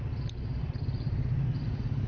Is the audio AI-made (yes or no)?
yes